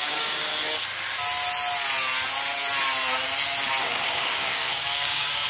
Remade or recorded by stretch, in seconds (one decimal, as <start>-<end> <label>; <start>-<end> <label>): 0.0-0.5 remade; 0.5-3.8 recorded; 3.8-5.5 remade